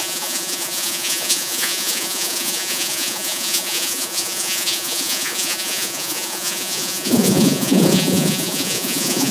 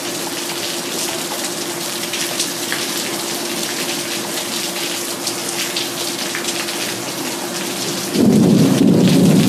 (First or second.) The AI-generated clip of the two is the first